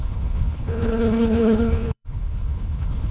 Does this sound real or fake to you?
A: fake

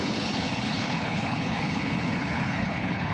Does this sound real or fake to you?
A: fake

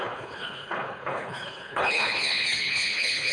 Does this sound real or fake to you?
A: fake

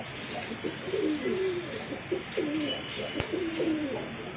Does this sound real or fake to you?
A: real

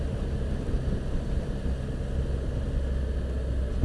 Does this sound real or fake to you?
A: real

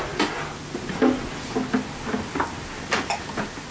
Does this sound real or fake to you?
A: real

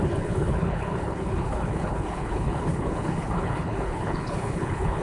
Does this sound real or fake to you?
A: fake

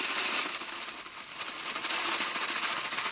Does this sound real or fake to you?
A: real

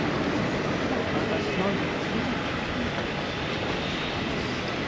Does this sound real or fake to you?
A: real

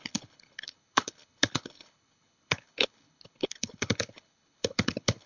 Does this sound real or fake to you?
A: fake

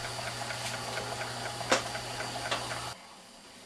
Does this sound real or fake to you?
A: real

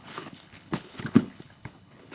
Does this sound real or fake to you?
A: fake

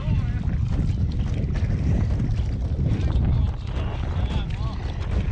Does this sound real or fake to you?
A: real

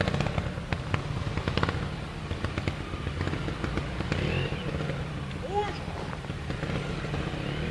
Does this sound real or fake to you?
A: real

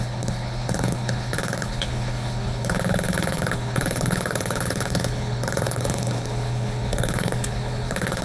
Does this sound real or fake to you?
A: fake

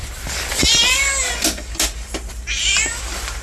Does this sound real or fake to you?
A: real